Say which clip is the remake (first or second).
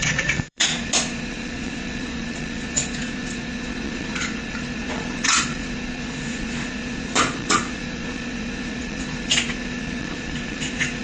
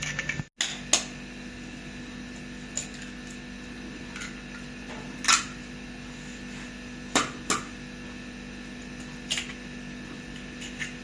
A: first